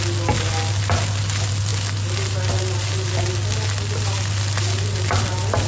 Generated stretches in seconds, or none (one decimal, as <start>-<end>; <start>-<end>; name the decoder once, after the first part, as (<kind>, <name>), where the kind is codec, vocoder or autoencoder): none